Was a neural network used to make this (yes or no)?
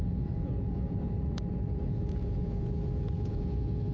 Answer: yes